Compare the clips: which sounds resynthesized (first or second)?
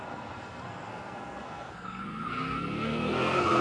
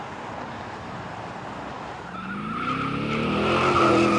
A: first